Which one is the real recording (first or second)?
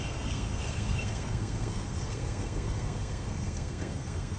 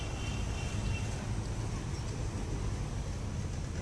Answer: second